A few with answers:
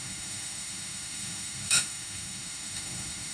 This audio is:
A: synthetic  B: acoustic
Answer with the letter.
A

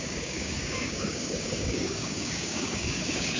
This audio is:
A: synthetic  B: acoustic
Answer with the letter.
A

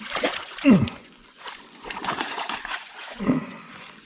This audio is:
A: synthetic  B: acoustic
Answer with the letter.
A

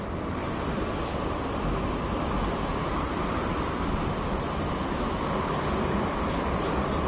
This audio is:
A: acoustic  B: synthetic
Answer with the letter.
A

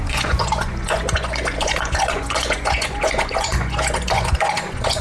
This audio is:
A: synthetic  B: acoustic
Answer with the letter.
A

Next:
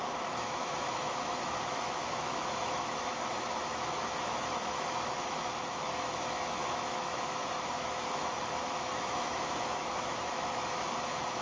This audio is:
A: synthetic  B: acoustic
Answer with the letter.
A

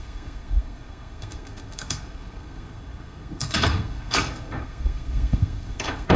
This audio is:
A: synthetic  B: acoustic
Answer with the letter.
A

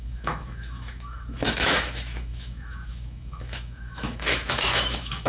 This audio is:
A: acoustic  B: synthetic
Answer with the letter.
B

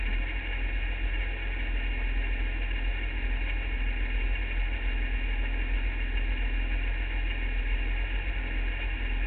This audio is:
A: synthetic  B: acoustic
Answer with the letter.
B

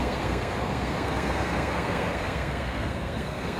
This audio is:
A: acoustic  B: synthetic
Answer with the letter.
B